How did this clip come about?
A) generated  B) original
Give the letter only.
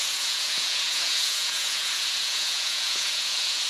A